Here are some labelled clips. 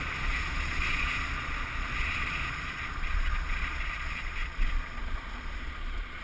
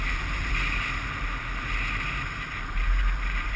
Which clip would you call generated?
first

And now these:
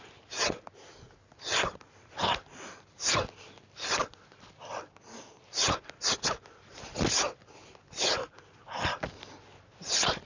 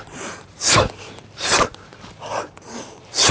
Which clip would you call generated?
second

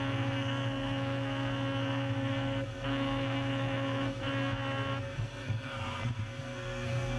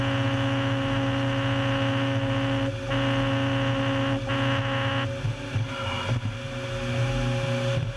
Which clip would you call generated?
first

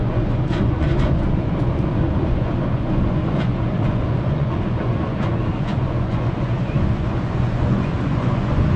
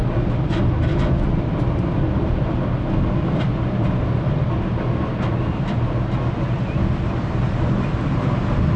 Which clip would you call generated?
first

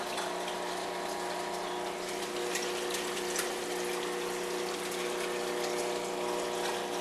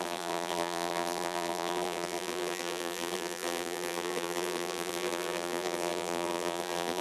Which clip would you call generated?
second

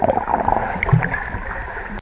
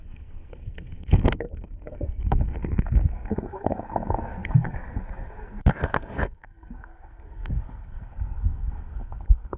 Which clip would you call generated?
second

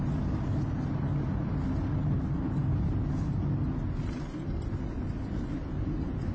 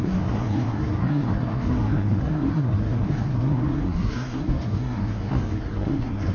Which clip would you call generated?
second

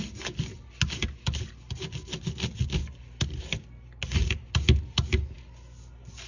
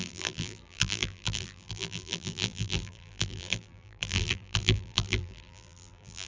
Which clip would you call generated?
second